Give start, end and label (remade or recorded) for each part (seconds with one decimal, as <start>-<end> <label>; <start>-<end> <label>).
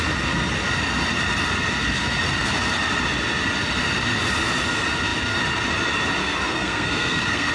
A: 0.0-6.2 recorded; 6.2-7.5 remade